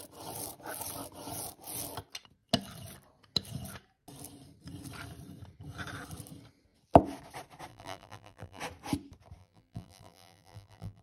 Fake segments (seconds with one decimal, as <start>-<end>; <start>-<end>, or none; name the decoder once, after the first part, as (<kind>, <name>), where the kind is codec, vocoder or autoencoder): 7.7-8.6 (vocoder, BigVGAN v2); 9.4-11.0